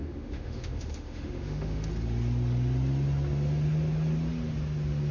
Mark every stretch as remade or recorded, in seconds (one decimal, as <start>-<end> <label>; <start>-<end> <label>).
0.0-1.9 remade; 1.9-5.1 recorded